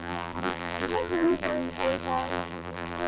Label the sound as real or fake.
fake